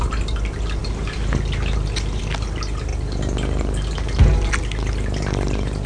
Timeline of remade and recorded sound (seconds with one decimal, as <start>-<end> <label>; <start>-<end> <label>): 0.0-5.9 recorded